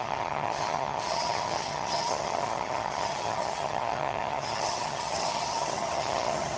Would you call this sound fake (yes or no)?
yes